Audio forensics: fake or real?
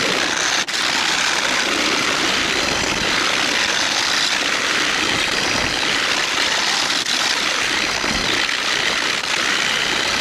real